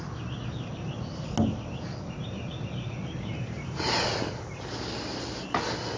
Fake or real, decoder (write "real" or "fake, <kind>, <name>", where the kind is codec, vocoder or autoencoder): real